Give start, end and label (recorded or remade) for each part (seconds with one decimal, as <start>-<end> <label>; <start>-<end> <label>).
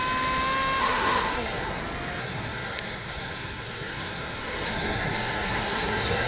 0.0-0.8 recorded; 0.8-1.8 remade; 1.8-2.2 recorded; 2.2-6.3 remade